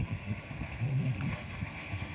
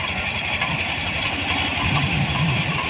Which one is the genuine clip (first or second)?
second